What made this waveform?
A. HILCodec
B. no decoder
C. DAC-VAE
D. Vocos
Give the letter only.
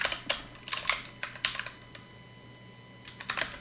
B